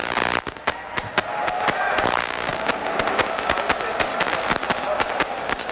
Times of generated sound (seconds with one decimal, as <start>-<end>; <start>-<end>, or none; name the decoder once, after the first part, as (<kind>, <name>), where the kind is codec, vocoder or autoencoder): none